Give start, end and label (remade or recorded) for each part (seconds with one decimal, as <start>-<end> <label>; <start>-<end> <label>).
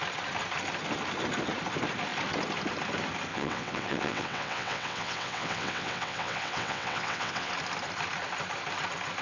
0.0-3.3 recorded; 3.3-7.5 remade; 7.5-9.2 recorded